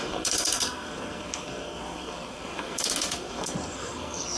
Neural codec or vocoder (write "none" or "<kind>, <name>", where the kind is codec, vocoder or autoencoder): codec, SNAC